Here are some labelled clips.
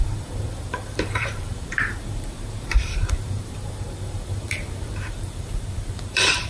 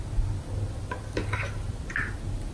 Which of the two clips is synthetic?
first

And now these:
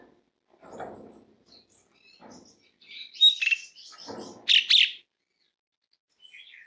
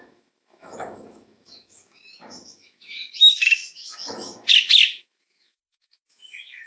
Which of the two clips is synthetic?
second